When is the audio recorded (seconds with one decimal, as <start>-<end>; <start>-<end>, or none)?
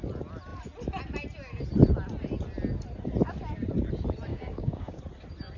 0.0-4.3; 5.0-5.6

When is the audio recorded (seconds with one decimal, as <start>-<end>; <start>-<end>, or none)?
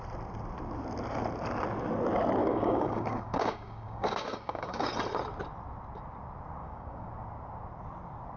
0.0-2.4; 4.9-6.6; 7.1-8.4